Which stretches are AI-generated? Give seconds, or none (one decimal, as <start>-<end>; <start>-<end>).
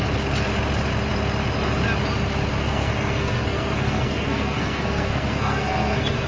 2.6-6.3